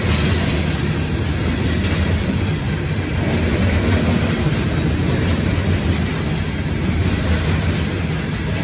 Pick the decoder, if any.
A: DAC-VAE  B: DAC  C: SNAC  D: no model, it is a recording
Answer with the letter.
D